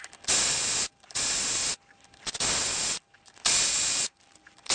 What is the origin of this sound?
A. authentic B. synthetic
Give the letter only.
A